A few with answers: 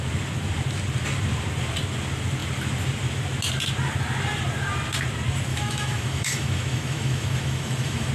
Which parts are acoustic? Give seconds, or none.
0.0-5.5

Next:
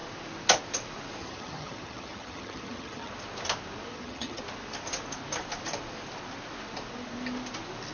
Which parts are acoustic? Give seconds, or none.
0.0-1.2; 3.1-3.9; 4.4-7.9